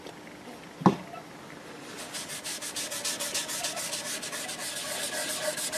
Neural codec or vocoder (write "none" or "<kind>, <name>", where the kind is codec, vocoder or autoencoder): none